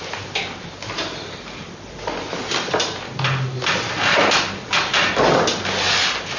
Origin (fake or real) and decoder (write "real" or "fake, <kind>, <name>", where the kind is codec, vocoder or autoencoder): real